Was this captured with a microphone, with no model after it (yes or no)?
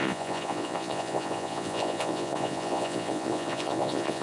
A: no